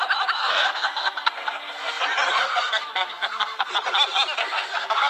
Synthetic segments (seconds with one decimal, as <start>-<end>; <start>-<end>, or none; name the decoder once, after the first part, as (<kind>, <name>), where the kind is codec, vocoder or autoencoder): 0.4-2.0 (codec, SNAC); 2.4-3.7; 4.4-5.1